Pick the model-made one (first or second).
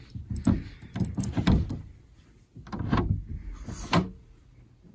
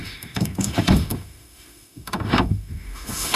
second